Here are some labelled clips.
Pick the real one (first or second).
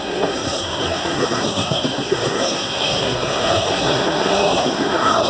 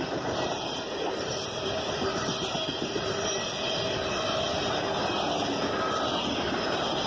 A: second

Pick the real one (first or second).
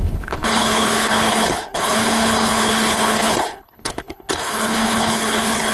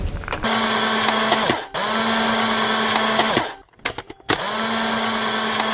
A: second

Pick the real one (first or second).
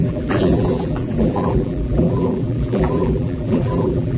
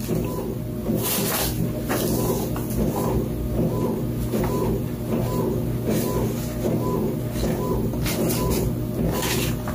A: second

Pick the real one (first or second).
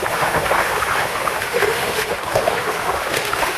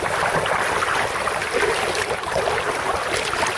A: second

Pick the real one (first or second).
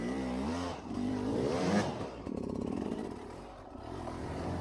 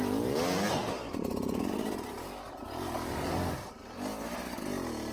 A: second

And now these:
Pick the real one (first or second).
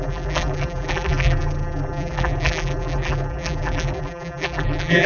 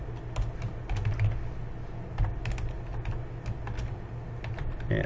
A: second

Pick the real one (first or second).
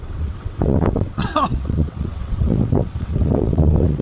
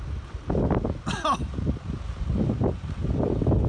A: second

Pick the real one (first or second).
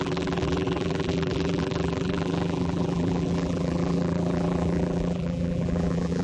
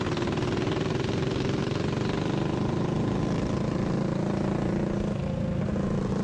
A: second